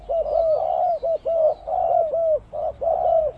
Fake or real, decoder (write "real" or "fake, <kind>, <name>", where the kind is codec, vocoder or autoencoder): real